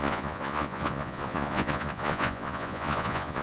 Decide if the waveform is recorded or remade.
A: remade